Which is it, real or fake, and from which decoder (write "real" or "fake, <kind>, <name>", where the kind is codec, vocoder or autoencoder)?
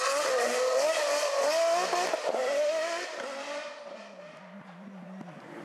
fake, vocoder, BigVGAN v2